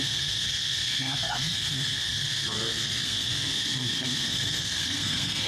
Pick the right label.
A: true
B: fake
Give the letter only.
B